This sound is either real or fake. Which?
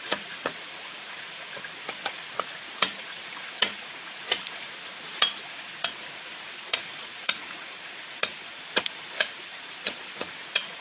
fake